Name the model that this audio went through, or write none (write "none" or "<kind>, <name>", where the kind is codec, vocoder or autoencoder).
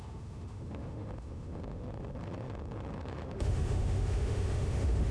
autoencoder, DAC-VAE